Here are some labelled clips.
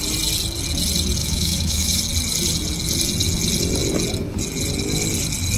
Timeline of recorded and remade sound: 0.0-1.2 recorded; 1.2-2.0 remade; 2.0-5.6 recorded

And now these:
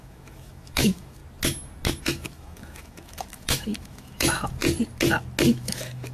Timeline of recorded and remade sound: 0.0-1.2 remade; 1.2-2.0 recorded; 2.0-4.6 remade; 4.6-5.5 recorded; 5.5-6.1 remade

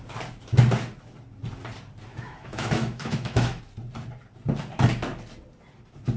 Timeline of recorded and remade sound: 0.0-2.1 recorded; 2.1-3.6 remade; 3.6-6.2 recorded

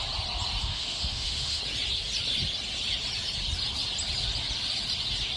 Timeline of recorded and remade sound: 0.0-0.6 recorded; 0.6-1.6 remade; 1.6-5.4 recorded